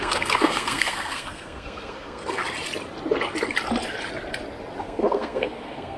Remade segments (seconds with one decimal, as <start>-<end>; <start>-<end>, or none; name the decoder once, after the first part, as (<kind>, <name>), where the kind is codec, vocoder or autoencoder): 0.0-2.4 (codec, SNAC); 4.8-6.0